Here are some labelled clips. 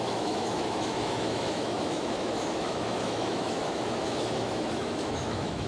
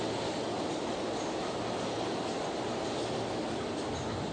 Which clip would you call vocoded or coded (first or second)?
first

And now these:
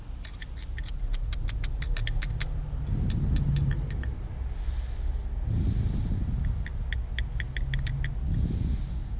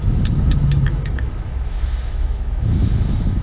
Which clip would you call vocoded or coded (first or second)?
second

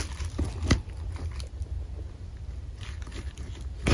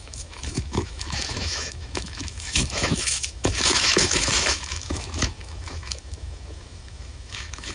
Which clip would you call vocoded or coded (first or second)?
second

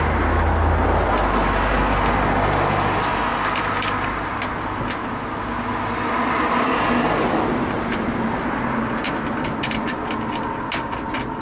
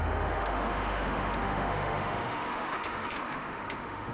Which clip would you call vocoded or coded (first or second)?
second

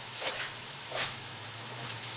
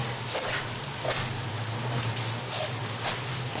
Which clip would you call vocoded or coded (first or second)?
first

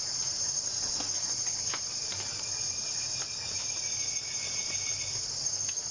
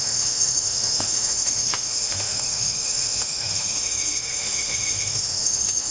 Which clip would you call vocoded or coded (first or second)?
second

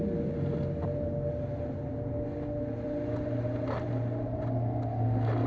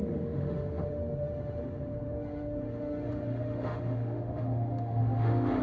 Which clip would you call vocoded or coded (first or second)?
second